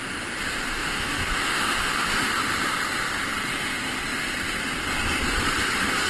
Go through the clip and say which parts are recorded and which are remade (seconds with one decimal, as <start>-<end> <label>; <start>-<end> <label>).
0.0-0.7 recorded; 0.7-2.3 remade; 2.3-6.1 recorded